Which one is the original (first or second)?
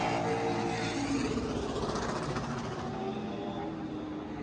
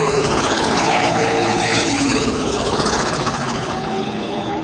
first